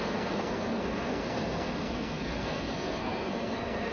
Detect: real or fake fake